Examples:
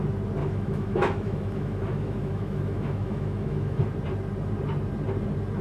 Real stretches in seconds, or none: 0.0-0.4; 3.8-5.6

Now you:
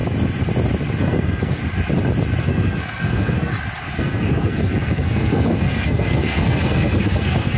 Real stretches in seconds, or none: 0.0-1.0; 1.6-2.4; 3.5-4.0

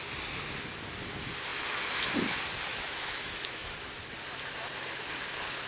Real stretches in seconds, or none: 0.0-2.7; 4.0-5.7